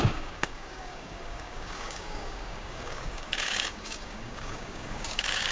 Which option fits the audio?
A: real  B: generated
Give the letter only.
B